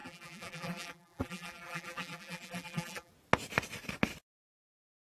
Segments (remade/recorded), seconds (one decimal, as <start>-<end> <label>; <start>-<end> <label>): 0.0-3.1 remade; 3.1-5.1 recorded